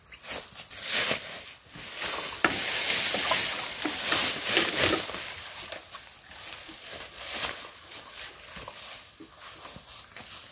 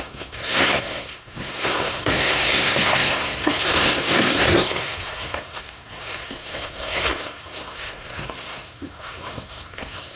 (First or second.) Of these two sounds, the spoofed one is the second